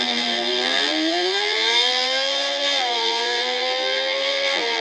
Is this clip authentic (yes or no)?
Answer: no